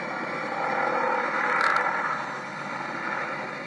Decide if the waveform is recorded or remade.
recorded